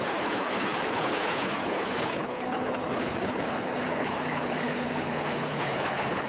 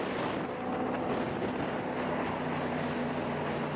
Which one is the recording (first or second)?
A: second